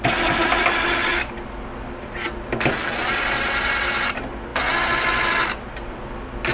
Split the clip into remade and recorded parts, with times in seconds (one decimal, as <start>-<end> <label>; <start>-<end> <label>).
0.0-6.5 recorded